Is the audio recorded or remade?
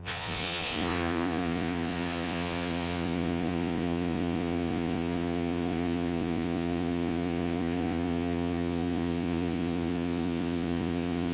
remade